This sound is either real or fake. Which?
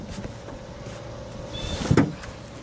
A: real